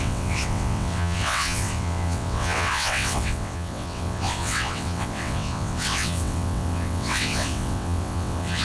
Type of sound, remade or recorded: remade